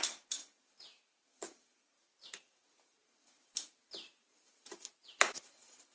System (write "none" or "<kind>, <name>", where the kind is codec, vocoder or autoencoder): vocoder, BigVGAN v2